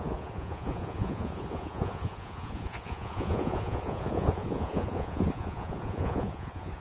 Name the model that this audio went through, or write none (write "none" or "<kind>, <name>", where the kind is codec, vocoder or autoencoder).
vocoder, Vocos